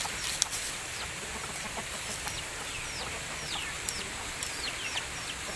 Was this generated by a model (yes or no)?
no